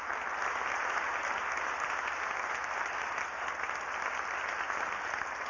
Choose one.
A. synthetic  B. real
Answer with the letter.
B